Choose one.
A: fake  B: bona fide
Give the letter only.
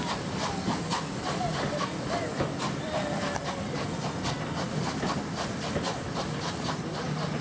B